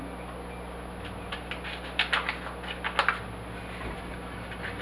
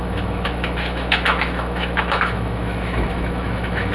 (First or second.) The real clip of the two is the first